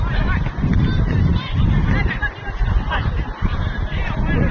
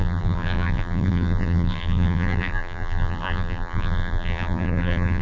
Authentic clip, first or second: first